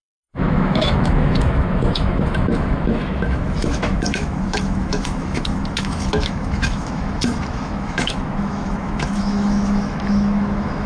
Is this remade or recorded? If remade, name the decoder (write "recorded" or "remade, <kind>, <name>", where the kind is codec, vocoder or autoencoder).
remade, autoencoder, DAC-VAE